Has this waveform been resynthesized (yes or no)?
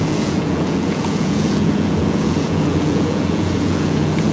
yes